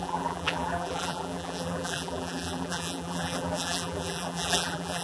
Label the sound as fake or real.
fake